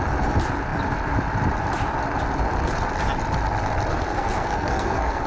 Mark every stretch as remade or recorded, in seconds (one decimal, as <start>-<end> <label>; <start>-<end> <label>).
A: 0.0-3.9 recorded; 3.9-5.3 remade